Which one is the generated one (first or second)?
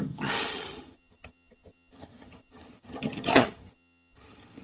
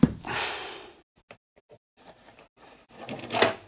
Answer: first